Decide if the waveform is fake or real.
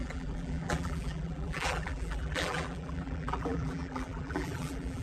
fake